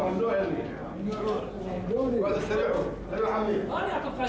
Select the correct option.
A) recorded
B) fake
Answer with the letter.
A